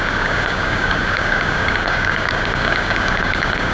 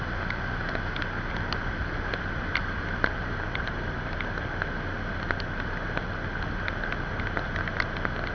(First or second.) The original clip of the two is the second